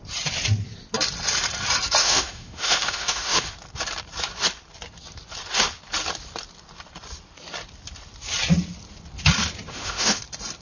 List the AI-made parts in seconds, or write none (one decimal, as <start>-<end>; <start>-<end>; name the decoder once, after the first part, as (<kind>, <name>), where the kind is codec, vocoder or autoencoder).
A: 2.0-3.5 (autoencoder, DAC-VAE); 9.7-10.2